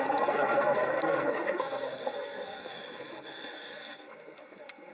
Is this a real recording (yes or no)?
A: no